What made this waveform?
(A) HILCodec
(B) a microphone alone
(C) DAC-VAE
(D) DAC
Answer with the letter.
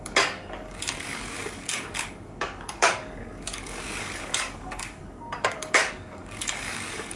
D